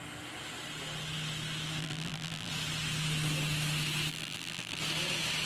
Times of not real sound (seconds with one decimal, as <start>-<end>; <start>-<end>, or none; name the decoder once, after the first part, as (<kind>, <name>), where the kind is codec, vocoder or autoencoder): 1.8-2.5 (vocoder, BigVGAN v2); 4.1-4.8